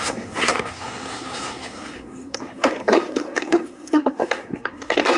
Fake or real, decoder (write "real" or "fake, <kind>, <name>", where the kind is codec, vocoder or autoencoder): fake, codec, SNAC